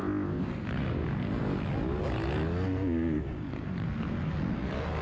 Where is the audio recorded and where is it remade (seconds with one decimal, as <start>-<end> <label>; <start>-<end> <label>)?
0.0-0.5 remade; 0.5-5.0 recorded